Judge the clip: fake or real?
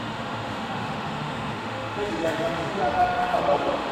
fake